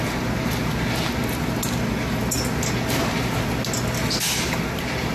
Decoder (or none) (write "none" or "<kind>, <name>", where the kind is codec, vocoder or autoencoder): none